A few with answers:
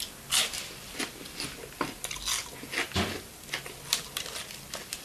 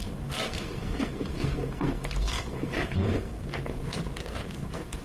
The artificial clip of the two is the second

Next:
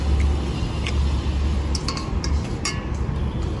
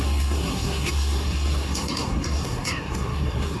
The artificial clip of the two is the second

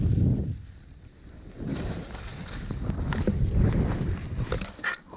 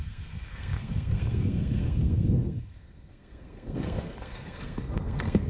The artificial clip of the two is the second